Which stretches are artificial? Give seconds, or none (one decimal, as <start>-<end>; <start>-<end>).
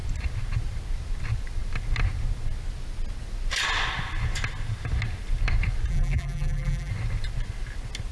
5.9-6.9